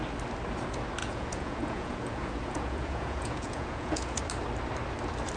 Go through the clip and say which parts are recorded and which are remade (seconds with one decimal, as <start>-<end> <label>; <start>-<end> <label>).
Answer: 0.0-1.0 recorded; 1.0-4.2 remade; 4.2-5.4 recorded